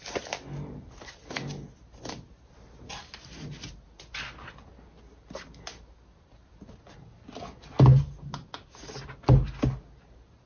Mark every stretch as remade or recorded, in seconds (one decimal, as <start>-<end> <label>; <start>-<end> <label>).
0.0-10.5 recorded